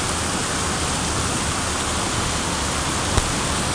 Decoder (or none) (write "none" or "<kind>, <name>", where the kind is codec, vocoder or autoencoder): none